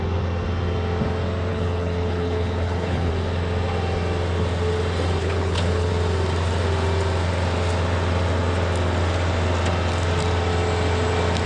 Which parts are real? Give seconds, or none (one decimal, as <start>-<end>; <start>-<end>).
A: 0.0-1.5; 3.1-5.2; 5.9-11.5